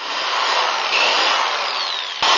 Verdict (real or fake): real